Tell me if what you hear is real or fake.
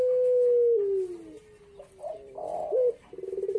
real